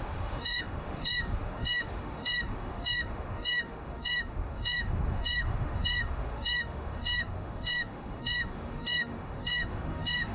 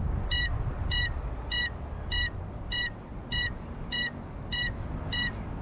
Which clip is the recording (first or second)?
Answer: second